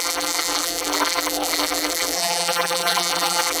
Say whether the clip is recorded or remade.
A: remade